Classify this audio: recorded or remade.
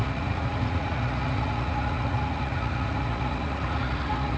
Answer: remade